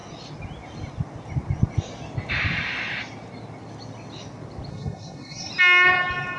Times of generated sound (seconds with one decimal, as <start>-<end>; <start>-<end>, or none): 4.7-5.5